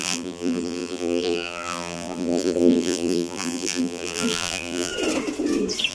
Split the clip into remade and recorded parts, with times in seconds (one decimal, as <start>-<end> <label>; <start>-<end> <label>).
0.0-4.9 remade; 4.9-5.9 recorded